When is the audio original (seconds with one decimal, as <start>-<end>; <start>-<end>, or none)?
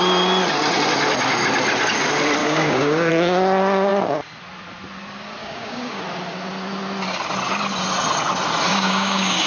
0.0-2.4; 3.1-5.4; 6.0-8.7